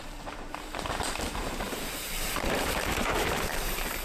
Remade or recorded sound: remade